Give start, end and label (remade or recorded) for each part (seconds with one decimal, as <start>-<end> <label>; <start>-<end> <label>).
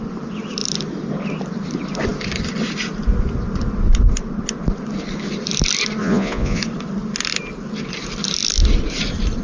0.0-6.0 recorded; 6.0-6.6 remade; 6.6-9.4 recorded